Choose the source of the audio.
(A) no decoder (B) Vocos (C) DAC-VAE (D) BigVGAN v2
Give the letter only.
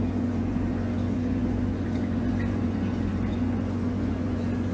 B